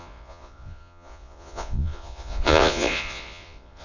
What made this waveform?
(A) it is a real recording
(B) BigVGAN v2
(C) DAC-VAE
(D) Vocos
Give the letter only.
D